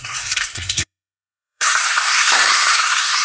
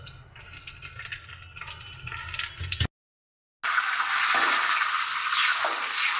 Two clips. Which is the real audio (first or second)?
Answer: second